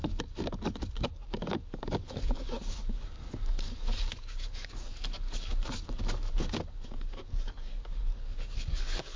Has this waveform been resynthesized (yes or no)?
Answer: yes